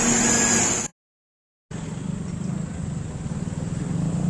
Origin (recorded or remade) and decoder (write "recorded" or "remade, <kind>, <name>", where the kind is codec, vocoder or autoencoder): recorded